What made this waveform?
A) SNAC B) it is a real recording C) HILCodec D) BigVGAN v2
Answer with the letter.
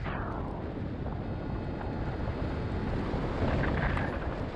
B